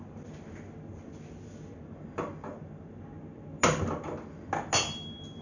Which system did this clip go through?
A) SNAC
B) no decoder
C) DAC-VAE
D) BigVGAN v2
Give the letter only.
B